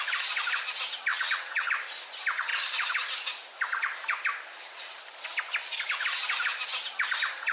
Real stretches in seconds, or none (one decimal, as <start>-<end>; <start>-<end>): 0.0-1.1; 1.7-7.5